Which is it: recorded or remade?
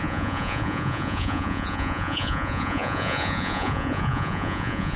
remade